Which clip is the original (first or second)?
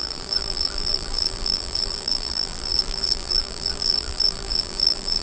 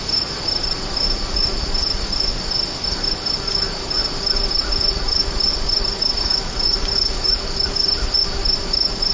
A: second